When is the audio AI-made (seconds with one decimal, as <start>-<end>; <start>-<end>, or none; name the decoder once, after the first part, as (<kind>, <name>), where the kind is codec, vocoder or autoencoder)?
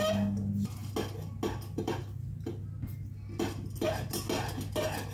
none